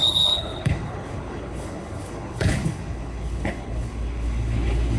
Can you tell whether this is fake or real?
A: fake